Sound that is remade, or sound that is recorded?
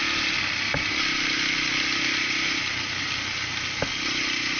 recorded